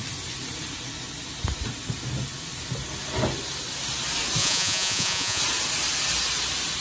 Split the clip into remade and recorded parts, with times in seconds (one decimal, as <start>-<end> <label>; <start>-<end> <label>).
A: 0.0-4.4 recorded; 4.4-5.4 remade; 5.4-6.8 recorded